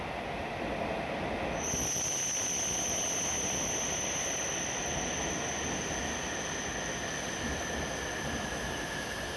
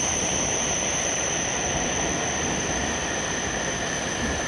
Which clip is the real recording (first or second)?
first